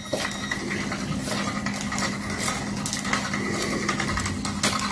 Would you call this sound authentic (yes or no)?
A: yes